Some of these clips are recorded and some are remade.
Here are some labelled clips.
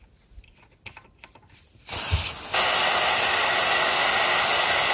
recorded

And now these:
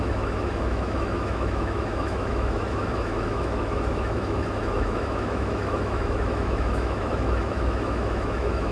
remade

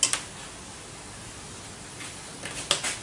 recorded